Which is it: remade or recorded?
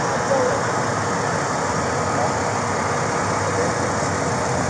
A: recorded